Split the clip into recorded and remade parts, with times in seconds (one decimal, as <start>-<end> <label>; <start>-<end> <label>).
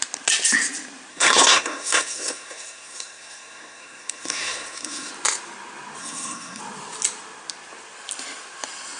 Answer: 0.0-1.1 recorded; 1.1-5.1 remade; 5.1-6.0 recorded; 6.0-6.6 remade; 6.6-9.0 recorded